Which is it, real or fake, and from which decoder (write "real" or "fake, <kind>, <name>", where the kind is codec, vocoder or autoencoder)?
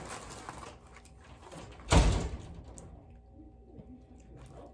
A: real